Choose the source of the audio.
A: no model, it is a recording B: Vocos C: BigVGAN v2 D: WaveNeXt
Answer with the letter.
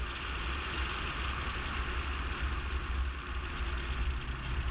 A